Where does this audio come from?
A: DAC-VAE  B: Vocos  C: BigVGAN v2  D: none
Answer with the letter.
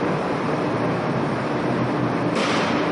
D